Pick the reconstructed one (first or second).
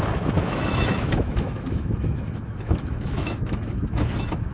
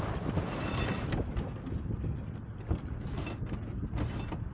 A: first